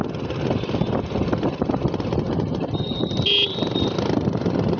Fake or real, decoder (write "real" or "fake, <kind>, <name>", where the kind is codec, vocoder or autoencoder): real